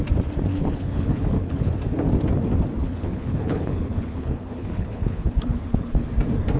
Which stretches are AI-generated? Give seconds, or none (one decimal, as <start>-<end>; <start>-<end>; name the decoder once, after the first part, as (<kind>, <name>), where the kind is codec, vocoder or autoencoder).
0.5-1.7 (codec, HILCodec); 2.8-6.1